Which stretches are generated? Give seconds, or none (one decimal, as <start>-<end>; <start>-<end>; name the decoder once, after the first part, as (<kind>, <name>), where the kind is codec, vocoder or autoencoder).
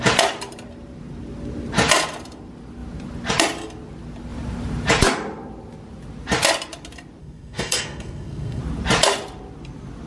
7.2-8.6 (codec, SNAC)